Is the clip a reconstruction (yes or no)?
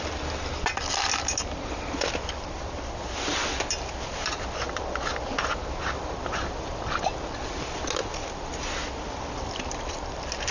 no